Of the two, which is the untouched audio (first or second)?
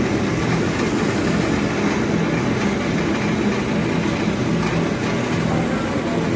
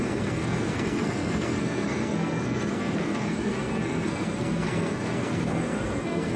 first